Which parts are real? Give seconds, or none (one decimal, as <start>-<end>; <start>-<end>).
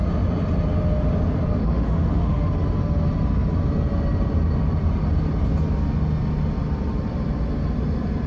0.0-1.6; 2.5-8.3